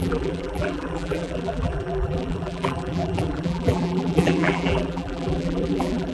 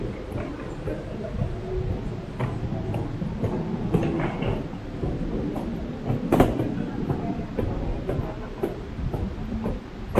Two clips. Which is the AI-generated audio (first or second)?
first